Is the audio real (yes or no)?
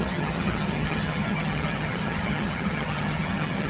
no